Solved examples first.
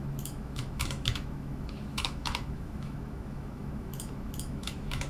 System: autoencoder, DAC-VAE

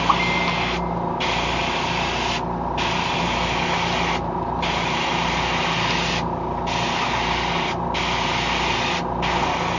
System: none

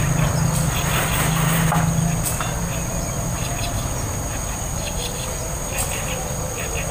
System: none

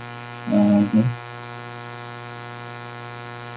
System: autoencoder, DAC-VAE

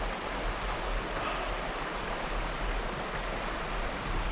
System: none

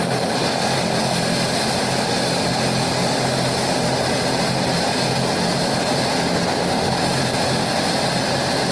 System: none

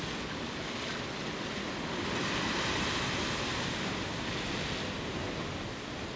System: none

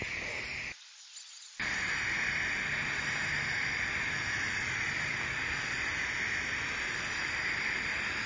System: none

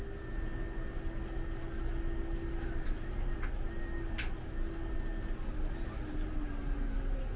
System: none